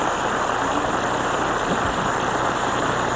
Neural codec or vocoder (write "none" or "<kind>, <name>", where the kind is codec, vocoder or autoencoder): none